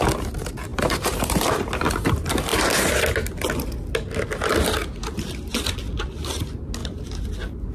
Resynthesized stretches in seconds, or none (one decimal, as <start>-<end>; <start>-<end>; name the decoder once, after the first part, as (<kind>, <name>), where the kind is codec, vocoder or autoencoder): 0.7-1.5 (vocoder, BigVGAN v2)